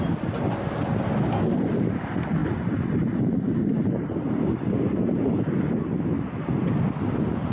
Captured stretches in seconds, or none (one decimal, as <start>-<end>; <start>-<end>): 0.0-7.5